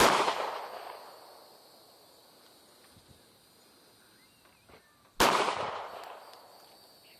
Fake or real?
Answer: real